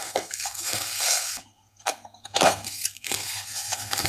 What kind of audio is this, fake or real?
fake